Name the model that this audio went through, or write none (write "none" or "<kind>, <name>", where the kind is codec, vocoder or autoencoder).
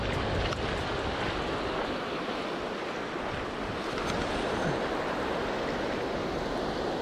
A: none